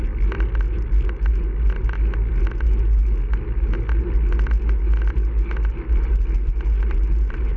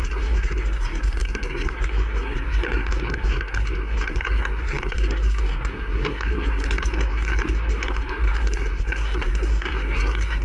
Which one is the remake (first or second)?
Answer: second